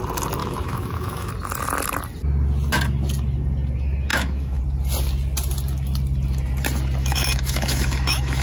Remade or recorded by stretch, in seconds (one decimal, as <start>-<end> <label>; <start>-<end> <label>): 0.0-0.4 recorded; 0.4-1.3 remade; 1.3-4.1 recorded; 4.1-4.6 remade; 4.6-7.0 recorded; 7.0-8.4 remade